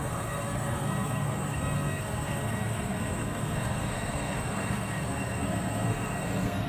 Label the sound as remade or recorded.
remade